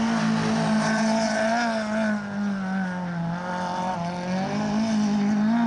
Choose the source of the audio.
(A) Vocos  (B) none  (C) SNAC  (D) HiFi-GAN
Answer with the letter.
B